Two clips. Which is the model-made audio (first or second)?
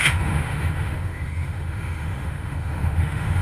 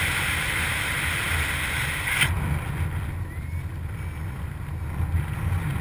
first